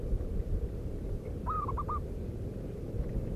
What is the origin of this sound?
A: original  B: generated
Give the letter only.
A